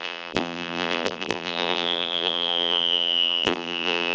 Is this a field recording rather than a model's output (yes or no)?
no